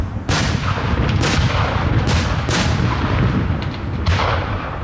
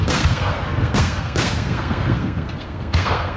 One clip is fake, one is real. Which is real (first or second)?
first